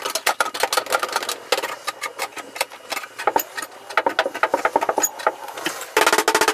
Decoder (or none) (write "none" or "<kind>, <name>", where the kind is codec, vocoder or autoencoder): none